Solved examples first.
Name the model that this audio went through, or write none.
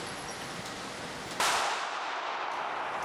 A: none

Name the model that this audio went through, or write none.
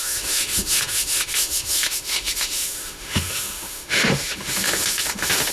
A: autoencoder, DAC-VAE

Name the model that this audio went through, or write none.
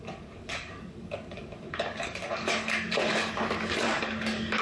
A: codec, DAC